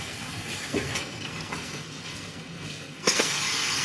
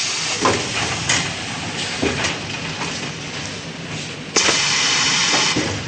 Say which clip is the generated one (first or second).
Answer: first